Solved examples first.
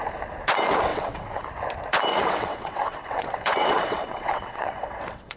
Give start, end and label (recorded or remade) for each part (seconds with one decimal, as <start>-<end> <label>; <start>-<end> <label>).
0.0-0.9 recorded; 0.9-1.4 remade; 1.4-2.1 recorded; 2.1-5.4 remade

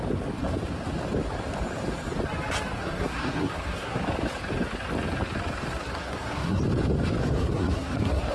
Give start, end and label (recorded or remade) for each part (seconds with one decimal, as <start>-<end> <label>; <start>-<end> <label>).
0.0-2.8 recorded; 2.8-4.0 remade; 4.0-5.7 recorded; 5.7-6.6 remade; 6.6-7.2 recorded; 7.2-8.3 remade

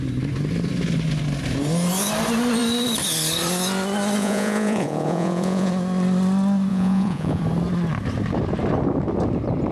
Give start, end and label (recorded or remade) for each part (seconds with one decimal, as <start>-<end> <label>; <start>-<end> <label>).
0.0-4.2 recorded; 4.2-5.7 remade; 5.7-6.7 recorded; 6.7-7.4 remade; 7.4-9.7 recorded

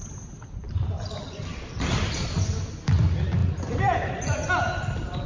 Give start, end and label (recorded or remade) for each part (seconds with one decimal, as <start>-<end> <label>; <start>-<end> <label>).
0.0-0.6 recorded; 0.6-1.9 remade; 1.9-3.4 recorded; 3.4-4.5 remade; 4.5-5.3 recorded

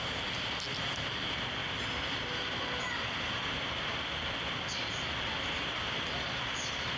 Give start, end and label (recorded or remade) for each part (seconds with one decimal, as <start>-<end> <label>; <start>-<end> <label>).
0.0-7.0 recorded

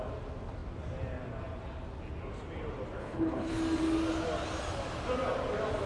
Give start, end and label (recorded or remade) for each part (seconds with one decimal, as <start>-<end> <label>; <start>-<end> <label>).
0.0-3.0 recorded; 3.0-3.6 remade; 3.6-5.9 recorded